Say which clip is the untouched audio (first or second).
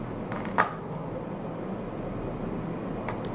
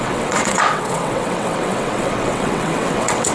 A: first